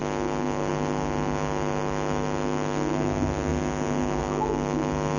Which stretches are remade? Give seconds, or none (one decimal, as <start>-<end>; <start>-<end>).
none